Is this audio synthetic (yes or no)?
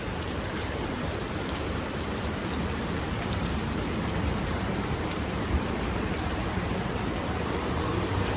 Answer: yes